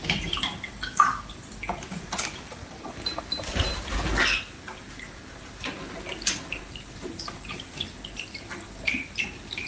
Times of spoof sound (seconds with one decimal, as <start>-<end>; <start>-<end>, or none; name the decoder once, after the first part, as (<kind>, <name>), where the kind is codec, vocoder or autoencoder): none